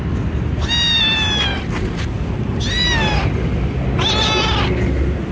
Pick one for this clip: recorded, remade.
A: recorded